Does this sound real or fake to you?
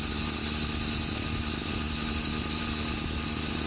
real